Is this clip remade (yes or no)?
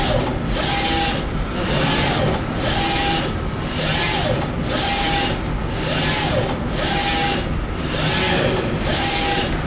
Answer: no